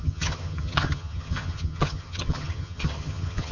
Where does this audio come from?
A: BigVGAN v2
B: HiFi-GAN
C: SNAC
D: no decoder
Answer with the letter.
B